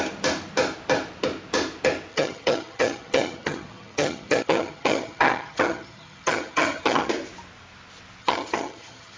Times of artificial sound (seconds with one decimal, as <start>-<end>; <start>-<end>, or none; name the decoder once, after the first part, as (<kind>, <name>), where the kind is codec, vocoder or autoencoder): 2.1-7.1 (vocoder, HiFi-GAN); 8.2-9.2